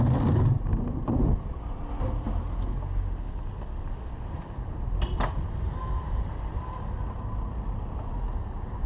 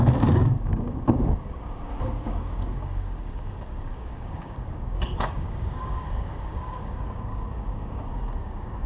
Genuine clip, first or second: first